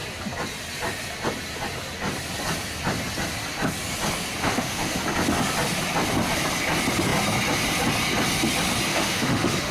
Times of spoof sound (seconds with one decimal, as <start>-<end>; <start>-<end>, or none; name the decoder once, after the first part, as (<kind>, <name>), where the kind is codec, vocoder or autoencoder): 4.4-5.0 (autoencoder, DAC-VAE); 8.9-9.7